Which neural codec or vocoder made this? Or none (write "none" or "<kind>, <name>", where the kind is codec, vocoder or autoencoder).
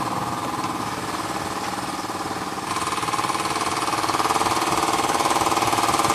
none